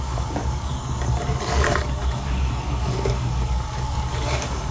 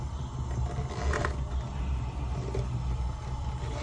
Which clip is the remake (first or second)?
first